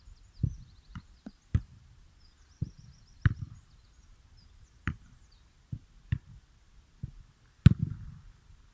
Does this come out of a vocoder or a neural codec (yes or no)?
no